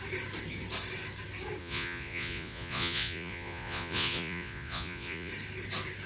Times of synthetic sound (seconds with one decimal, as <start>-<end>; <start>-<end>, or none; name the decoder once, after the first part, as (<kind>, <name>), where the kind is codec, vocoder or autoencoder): 1.6-5.3 (vocoder, Vocos)